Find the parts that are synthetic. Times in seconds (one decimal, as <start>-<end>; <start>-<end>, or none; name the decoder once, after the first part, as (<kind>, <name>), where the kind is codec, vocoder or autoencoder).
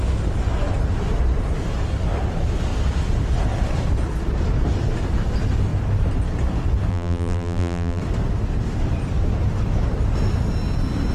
6.9-8.0 (vocoder, BigVGAN v2)